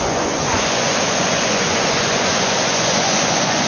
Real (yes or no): no